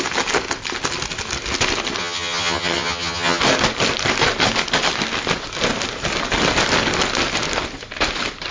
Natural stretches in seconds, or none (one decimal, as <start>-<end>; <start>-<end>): 0.0-2.0; 3.4-8.5